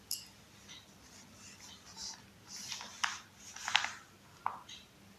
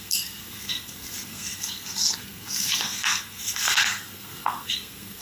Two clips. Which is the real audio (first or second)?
first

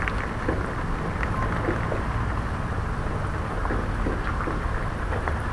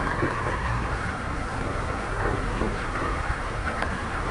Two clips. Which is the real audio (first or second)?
first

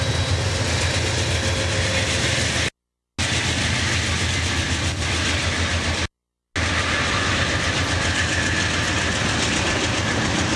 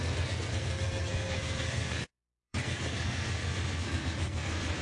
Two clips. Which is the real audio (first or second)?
first